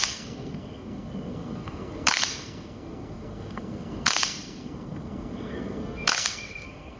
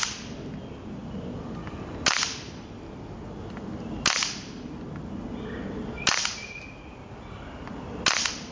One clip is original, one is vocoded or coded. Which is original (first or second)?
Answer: second